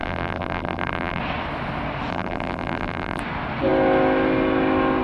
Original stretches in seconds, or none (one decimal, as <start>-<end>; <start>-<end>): 1.2-2.1; 3.2-5.0